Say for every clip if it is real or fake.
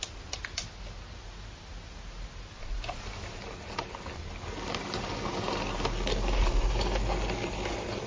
real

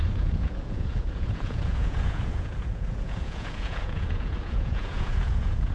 fake